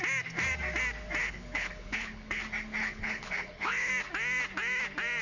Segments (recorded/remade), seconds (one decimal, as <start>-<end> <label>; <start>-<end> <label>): 0.0-1.2 recorded; 1.2-2.4 remade; 2.4-2.8 recorded; 2.8-3.9 remade; 3.9-5.2 recorded